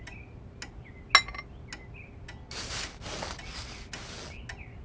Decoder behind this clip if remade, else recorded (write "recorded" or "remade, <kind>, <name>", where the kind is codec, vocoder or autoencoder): recorded